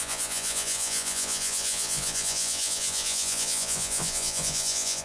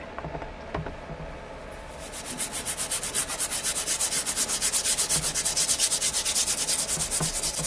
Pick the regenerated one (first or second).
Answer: first